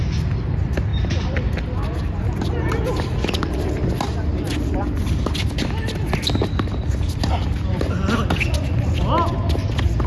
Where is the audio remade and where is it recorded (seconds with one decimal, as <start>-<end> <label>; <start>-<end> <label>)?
0.0-10.1 recorded